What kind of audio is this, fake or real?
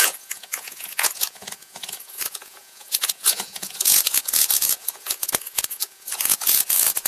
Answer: fake